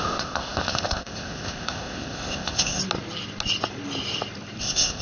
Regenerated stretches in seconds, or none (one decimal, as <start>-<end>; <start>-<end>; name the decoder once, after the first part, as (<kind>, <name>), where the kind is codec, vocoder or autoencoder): 0.0-2.8 (codec, ZipCodec); 4.6-5.0